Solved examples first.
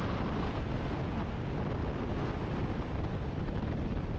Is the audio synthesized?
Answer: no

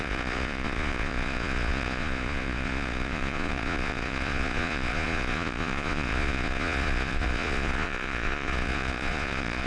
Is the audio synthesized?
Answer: yes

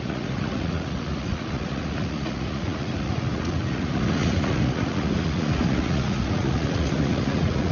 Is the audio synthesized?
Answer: yes